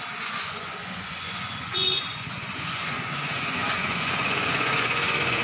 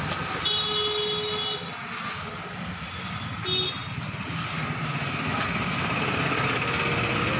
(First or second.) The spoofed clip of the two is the first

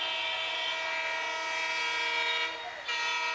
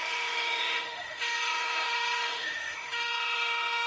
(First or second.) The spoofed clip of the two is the second